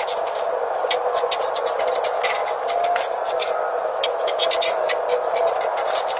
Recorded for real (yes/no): yes